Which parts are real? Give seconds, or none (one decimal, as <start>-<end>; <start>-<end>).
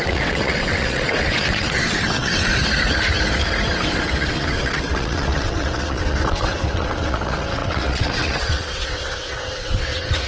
2.5-3.7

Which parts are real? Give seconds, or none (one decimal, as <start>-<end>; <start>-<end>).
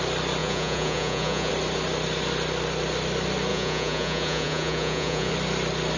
0.0-0.4; 1.5-3.5; 5.3-6.0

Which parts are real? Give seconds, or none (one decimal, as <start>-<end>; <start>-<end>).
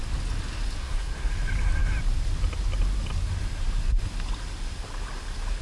0.0-0.8; 1.3-5.6